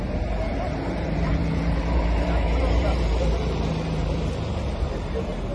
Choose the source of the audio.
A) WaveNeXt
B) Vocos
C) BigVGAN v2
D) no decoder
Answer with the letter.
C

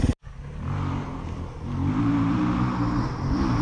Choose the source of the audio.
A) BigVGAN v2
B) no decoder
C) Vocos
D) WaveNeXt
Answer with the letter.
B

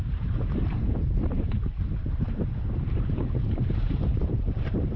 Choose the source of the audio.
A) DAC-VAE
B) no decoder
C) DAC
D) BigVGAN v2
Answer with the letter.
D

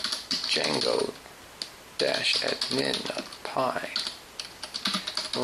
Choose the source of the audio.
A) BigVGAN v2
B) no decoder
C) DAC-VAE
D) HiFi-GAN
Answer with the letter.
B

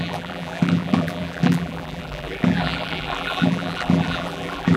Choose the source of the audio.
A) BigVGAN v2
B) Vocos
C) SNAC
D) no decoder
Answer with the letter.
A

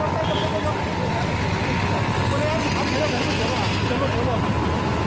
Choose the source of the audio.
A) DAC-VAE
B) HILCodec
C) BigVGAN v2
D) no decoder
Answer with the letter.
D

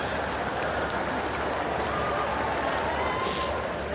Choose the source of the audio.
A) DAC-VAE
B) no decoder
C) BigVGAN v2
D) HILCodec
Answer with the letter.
B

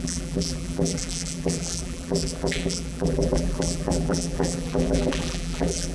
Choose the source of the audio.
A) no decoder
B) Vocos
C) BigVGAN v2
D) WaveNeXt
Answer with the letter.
C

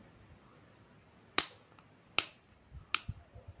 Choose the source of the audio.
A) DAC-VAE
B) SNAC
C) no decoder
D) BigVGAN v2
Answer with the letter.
C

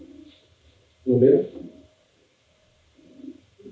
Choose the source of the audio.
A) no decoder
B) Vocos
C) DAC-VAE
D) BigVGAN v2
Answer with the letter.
D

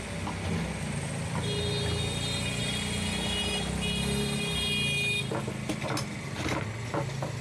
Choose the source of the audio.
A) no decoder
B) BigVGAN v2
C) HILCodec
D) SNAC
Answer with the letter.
A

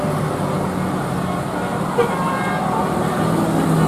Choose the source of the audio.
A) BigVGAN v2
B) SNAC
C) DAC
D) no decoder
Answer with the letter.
D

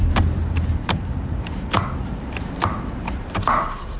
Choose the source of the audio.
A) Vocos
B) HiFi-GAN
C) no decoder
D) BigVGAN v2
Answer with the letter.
D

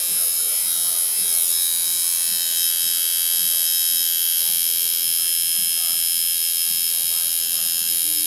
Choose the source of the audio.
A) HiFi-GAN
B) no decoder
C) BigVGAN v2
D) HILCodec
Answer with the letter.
B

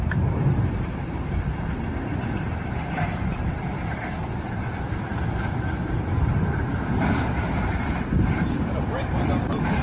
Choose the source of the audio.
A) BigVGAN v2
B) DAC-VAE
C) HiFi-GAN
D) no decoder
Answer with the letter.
A